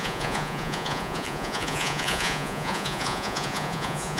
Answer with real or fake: fake